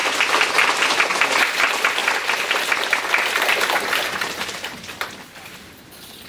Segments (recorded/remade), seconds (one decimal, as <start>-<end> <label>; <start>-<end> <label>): 0.0-1.0 remade; 1.0-2.0 recorded; 2.0-5.8 remade; 5.8-6.3 recorded